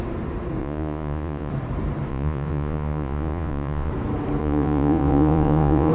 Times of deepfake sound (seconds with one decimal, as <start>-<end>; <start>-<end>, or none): 0.6-1.5; 2.1-3.9; 4.4-5.9